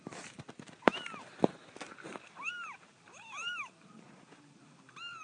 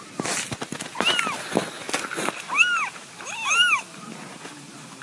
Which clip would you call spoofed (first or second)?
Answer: first